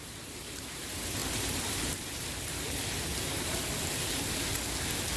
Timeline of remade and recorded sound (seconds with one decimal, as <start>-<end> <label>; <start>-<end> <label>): 0.0-4.5 remade; 4.5-5.2 recorded